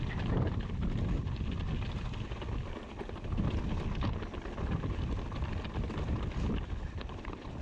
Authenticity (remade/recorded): recorded